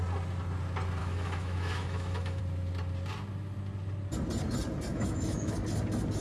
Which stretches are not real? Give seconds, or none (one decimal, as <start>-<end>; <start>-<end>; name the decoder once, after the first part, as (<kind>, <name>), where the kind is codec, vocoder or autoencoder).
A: 1.0-2.4 (autoencoder, DAC-VAE); 4.9-5.5